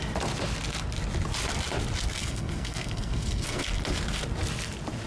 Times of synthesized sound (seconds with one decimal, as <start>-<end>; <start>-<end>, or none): 2.2-3.7